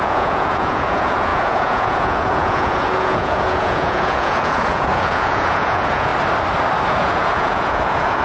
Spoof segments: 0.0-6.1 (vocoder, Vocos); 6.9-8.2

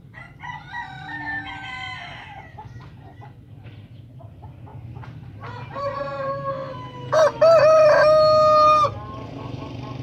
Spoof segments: none

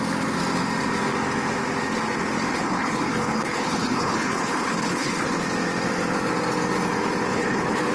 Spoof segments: 2.5-5.4 (codec, HILCodec); 7.3-7.9

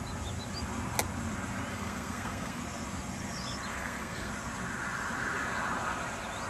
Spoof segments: 1.7-2.6 (codec, SNAC); 3.7-4.3